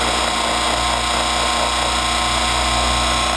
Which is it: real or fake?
real